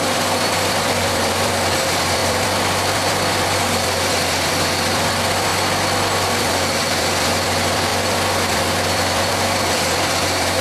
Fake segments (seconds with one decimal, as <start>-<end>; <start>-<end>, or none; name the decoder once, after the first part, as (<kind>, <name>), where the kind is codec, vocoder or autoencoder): 0.0-5.5 (vocoder, BigVGAN v2); 6.4-10.6